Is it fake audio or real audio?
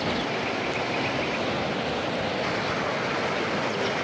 real